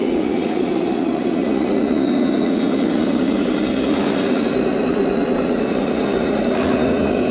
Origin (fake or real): fake